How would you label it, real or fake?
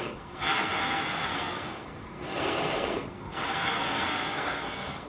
fake